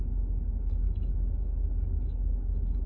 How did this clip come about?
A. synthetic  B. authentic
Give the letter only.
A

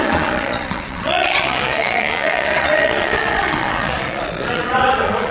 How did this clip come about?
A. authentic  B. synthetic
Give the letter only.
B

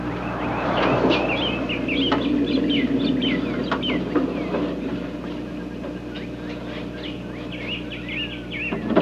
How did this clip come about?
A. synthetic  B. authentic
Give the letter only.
B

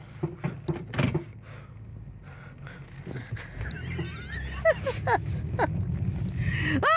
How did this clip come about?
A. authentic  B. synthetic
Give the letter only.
A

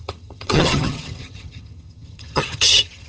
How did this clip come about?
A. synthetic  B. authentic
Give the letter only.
A